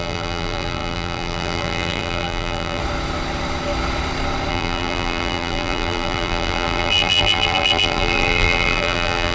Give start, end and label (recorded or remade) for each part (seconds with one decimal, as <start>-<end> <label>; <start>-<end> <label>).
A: 0.0-2.8 remade; 2.8-4.5 recorded; 4.5-9.3 remade